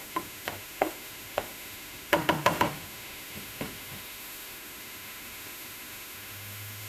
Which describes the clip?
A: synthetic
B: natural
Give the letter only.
A